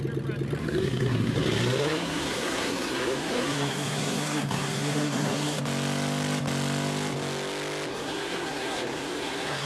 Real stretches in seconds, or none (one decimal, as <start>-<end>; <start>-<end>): 0.0-0.6; 5.6-7.9

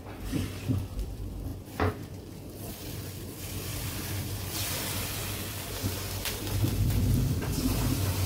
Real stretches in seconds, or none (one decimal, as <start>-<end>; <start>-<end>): 5.2-6.5

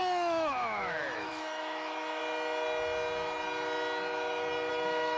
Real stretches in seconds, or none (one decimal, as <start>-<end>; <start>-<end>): 2.2-4.7

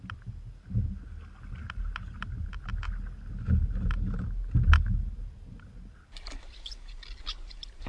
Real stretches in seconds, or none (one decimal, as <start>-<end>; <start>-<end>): 0.0-7.9

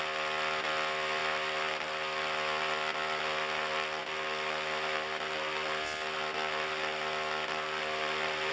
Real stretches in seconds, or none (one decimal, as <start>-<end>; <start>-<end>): 0.0-8.5

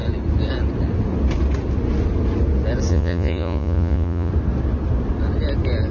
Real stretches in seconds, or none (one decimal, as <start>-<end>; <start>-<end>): 0.0-2.9; 4.3-5.9

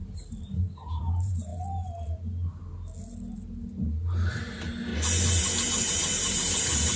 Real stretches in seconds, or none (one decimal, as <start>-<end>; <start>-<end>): 1.5-4.3; 4.9-5.4